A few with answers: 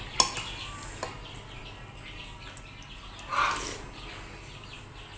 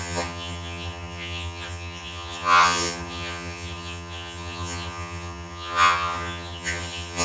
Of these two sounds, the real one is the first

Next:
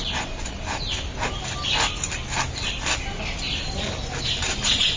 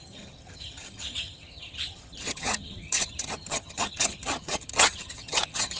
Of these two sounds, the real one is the first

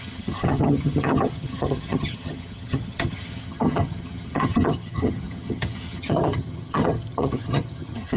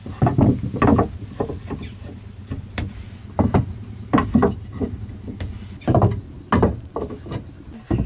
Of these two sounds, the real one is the second